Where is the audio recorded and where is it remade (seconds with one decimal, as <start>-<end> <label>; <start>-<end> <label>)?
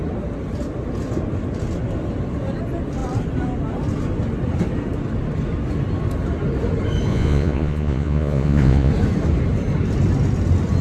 0.0-7.1 recorded; 7.1-8.9 remade; 8.9-10.8 recorded